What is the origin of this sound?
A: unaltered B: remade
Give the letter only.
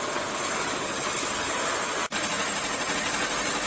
A